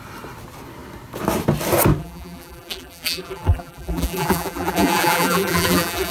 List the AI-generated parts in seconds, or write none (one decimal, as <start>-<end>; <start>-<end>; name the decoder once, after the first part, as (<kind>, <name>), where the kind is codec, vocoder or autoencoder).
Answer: 2.0-6.1 (vocoder, BigVGAN v2)